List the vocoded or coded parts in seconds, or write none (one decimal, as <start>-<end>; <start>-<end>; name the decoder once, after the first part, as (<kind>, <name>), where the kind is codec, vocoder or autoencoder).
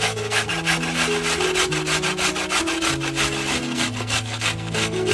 0.0-0.5 (codec, SNAC); 3.6-5.1